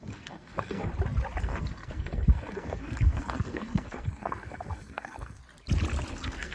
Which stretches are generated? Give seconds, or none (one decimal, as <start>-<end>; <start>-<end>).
0.0-0.9; 1.4-5.4; 6.1-6.5